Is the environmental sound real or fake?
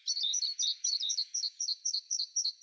fake